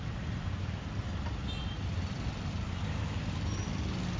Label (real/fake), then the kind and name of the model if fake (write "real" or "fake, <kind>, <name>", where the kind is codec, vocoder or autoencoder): real